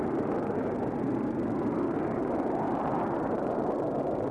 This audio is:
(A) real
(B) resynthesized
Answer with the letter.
B